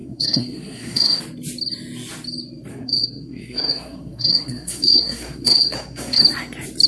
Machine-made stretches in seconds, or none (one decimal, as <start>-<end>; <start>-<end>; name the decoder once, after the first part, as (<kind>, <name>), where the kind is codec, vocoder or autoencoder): 0.0-1.2 (codec, SNAC); 2.7-6.2